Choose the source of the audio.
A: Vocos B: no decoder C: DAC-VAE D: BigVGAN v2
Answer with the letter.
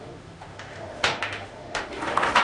C